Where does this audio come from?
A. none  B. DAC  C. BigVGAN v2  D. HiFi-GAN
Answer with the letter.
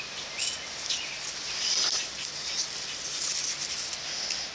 A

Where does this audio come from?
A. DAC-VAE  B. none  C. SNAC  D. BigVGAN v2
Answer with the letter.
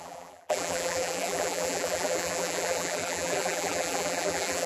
D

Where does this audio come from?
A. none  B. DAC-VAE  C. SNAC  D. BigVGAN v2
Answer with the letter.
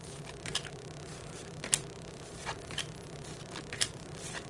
A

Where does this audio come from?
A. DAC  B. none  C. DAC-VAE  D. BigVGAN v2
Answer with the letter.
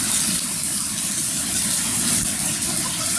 B